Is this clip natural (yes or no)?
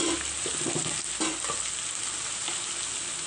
yes